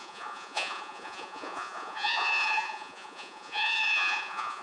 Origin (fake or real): fake